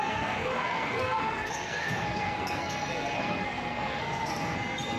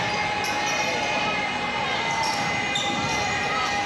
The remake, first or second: first